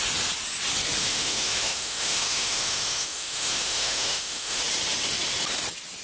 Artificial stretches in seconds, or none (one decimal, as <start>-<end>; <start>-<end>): 1.0-4.6